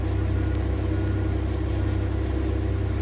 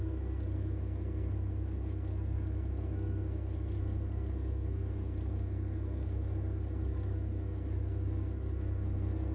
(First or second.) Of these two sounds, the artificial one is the second